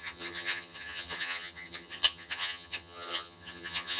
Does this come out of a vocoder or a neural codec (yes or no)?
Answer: yes